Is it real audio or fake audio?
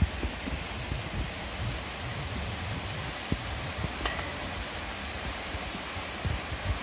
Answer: real